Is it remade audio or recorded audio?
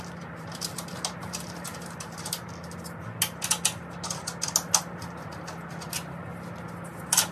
recorded